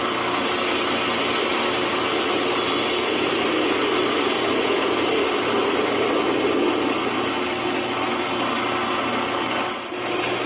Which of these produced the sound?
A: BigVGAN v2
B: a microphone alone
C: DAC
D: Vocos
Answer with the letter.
B